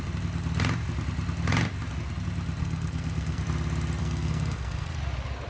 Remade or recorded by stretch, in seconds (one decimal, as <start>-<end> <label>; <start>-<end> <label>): 0.0-2.6 recorded; 2.6-3.4 remade; 3.4-4.0 recorded; 4.0-5.0 remade; 5.0-5.5 recorded